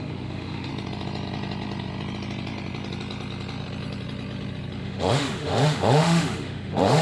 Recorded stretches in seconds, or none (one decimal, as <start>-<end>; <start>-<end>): 0.7-4.8

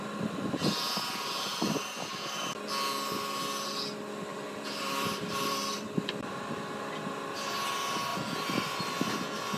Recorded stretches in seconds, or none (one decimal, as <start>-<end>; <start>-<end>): 0.0-1.5; 2.1-4.3; 6.4-9.6

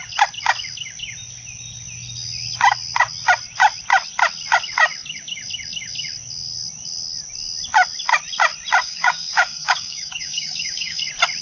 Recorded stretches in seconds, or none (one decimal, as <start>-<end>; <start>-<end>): 0.0-8.8; 11.0-11.4

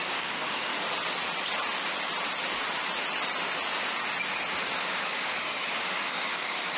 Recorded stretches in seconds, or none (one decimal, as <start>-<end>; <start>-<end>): 0.7-4.8

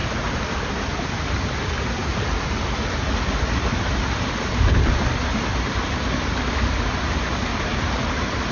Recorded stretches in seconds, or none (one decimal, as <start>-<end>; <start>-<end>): 0.7-2.0; 5.1-5.5; 6.9-8.5

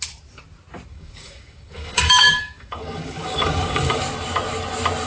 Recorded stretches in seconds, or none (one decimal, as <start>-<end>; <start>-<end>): 0.0-0.9; 4.0-5.1

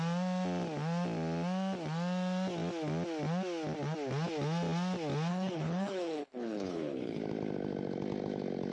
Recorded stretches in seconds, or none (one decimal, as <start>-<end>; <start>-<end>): 0.0-5.3; 7.2-8.7

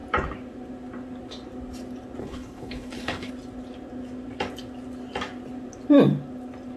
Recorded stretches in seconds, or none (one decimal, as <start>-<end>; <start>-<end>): 0.0-2.2; 3.3-6.8